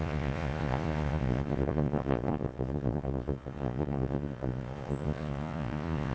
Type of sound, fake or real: fake